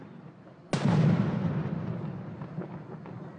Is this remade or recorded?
recorded